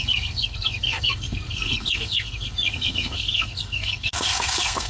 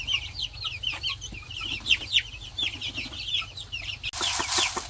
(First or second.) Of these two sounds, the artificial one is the first